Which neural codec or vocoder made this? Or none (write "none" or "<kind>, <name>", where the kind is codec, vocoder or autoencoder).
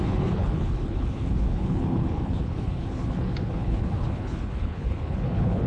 codec, HILCodec